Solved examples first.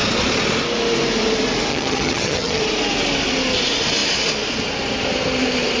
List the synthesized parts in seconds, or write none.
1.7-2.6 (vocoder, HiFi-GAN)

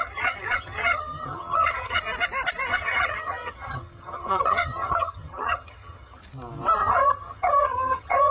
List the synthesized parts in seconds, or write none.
0.0-2.0 (vocoder, HiFi-GAN); 2.7-6.2; 6.8-8.3

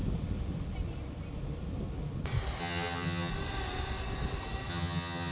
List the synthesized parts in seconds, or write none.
2.6-3.3 (vocoder, HiFi-GAN); 4.7-5.3

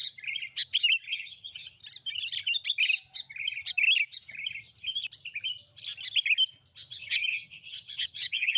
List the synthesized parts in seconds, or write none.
1.1-1.8 (vocoder, HiFi-GAN); 6.9-8.6

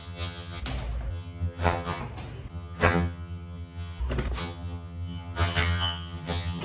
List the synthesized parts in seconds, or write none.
0.0-0.6 (vocoder, HiFi-GAN); 1.1-2.0; 2.5-4.0; 4.4-6.6

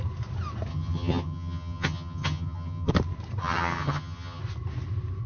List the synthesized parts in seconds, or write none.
0.7-2.9 (vocoder, HiFi-GAN); 3.4-4.4

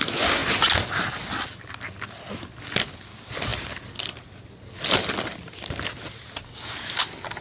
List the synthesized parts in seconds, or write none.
none

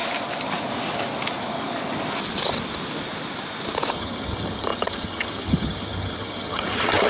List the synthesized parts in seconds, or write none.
3.9-7.1 (vocoder, HiFi-GAN)